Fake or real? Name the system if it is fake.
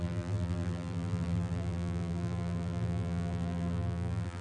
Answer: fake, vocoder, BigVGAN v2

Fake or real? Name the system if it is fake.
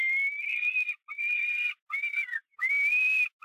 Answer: real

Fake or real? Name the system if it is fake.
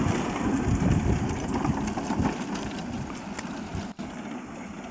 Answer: real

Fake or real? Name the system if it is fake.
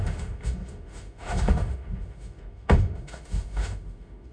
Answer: fake, autoencoder, DAC-VAE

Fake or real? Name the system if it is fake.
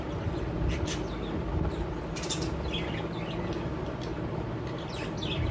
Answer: real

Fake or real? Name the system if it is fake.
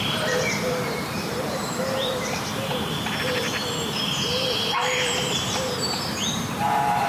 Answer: fake, vocoder, BigVGAN v2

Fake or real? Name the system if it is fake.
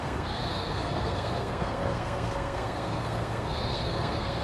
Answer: fake, codec, SNAC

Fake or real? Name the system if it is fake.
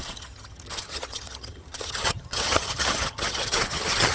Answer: fake, vocoder, HiFi-GAN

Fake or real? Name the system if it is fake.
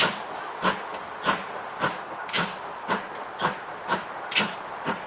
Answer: real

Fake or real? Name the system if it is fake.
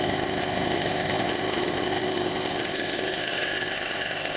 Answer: fake, codec, ZipCodec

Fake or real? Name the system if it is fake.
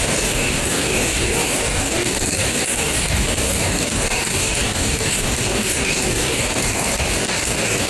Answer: fake, codec, DAC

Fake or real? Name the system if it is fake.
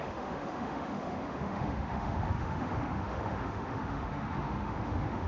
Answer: fake, autoencoder, DAC-VAE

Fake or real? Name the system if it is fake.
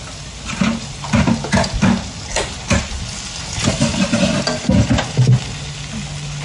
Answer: real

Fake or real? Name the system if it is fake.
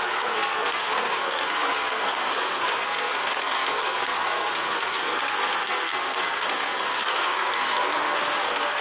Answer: fake, codec, SNAC